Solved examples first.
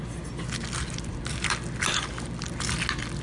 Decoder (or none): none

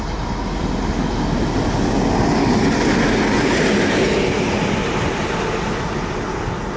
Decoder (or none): none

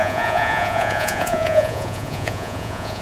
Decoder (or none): vocoder, Vocos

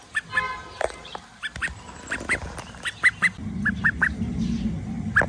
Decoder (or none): none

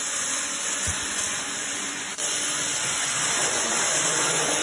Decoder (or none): vocoder, Vocos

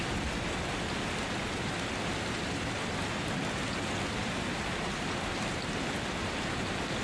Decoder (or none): none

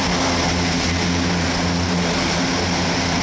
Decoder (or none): none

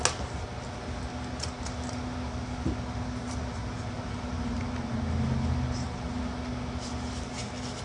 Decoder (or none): none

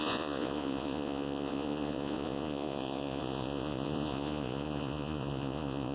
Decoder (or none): vocoder, Vocos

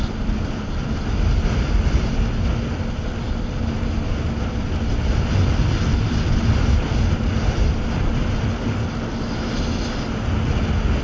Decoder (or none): none